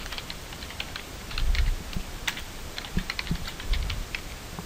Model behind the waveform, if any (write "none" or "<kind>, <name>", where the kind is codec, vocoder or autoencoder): vocoder, BigVGAN v2